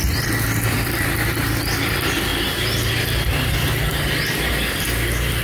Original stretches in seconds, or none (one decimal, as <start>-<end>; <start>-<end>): 1.6-5.4